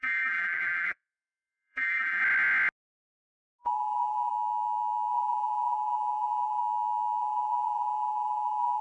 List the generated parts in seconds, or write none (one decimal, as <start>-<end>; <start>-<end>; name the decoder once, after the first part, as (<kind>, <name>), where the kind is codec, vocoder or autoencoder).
0.0-2.2 (vocoder, BigVGAN v2); 3.6-4.3; 5.1-6.6; 7.2-8.8